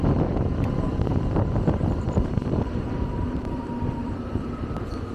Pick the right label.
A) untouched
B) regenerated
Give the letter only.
B